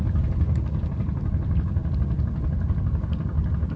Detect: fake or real real